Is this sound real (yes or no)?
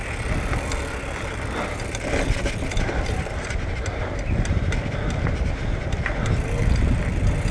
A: yes